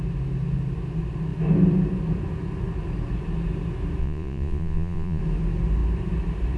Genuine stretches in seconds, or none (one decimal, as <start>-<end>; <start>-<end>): 0.0-4.0; 5.2-6.6